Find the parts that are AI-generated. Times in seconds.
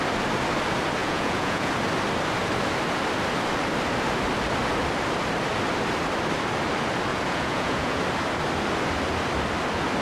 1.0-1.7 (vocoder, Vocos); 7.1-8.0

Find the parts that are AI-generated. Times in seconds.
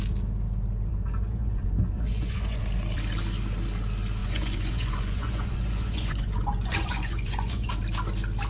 0.9-2.6 (vocoder, Vocos); 4.2-7.7